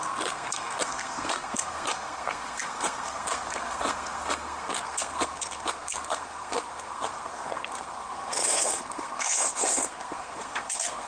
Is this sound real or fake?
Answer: fake